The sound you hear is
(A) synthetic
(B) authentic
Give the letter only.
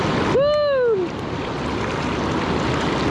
B